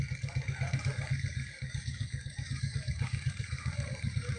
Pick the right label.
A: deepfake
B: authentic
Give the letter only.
A